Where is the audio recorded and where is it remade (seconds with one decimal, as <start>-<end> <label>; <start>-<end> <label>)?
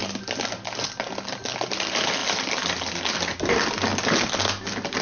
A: 0.0-5.0 recorded